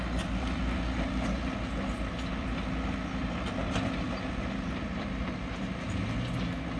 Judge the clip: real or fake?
real